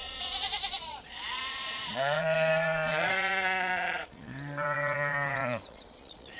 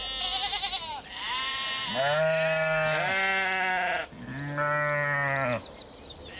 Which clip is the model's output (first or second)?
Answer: first